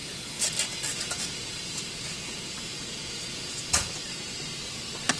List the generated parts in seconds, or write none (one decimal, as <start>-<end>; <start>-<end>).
0.0-0.5; 0.9-4.0